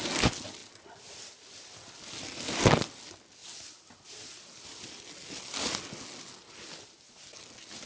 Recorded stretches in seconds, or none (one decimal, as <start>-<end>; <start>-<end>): 0.0-7.9